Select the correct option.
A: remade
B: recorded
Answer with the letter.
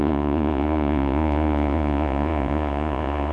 A